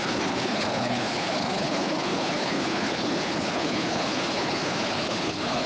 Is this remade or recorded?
remade